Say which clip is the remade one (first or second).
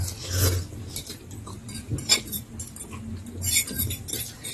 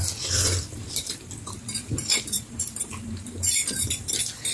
second